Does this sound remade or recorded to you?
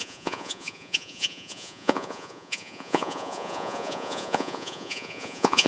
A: remade